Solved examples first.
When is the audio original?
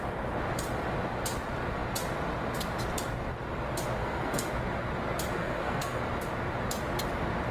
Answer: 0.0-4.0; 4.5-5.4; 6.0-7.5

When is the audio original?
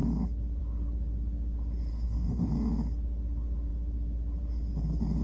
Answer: 0.0-1.9; 2.5-5.2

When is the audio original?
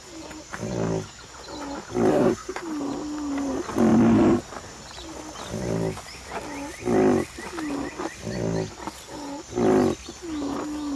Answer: 0.0-2.1; 2.6-11.0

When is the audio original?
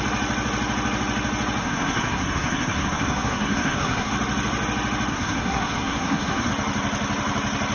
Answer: 0.0-1.6; 4.1-5.1; 6.5-7.7